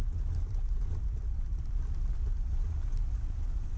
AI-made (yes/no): no